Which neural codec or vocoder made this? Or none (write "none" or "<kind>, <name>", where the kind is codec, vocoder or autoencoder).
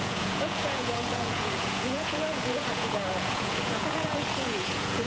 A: vocoder, Vocos